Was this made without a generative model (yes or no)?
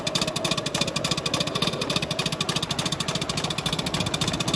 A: yes